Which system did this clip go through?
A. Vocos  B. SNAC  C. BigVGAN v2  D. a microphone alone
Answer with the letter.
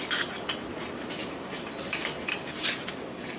D